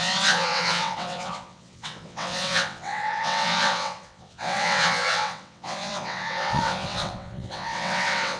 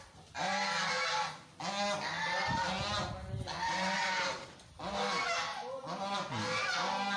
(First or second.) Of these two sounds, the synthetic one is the first